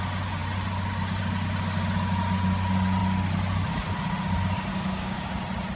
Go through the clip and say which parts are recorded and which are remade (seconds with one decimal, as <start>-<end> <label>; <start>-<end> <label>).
0.0-4.7 recorded; 4.7-5.3 remade; 5.3-5.8 recorded